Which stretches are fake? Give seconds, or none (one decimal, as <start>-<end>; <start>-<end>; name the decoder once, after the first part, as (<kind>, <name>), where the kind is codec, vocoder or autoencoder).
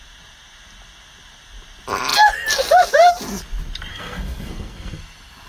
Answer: 3.9-5.0 (codec, SNAC)